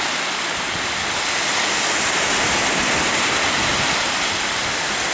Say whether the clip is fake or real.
real